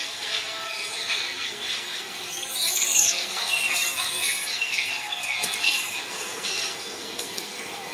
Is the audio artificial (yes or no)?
yes